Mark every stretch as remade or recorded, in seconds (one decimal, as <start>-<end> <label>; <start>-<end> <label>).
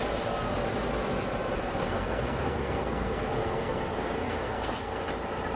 0.0-1.6 recorded; 1.6-5.0 remade; 5.0-5.6 recorded